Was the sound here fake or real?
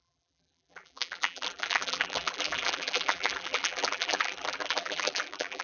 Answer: fake